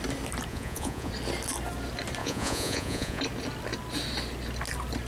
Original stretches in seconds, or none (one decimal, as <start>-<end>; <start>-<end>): 0.0-0.5; 1.1-2.2; 3.2-5.1